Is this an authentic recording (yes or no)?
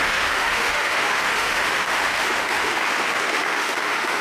no